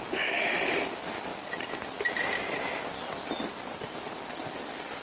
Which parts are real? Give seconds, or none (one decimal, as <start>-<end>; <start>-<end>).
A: 0.0-5.0